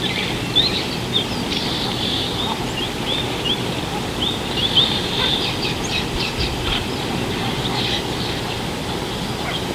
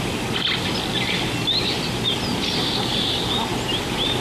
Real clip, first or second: second